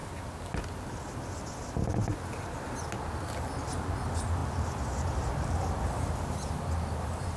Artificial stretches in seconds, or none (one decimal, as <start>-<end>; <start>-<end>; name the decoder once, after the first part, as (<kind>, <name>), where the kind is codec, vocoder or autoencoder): none